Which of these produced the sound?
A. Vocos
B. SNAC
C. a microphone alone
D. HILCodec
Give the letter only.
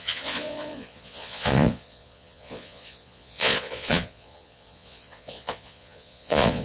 A